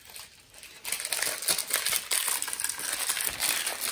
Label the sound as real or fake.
real